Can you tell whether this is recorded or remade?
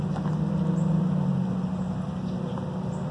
recorded